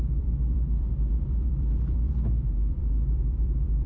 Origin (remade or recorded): remade